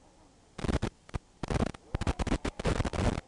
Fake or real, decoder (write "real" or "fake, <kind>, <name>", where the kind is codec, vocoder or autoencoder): real